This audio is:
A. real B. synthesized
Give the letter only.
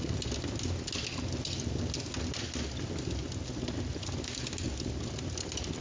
A